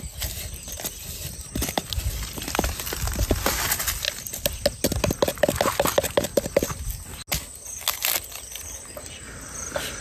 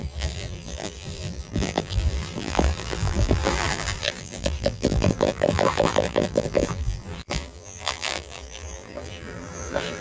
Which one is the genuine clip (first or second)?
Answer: first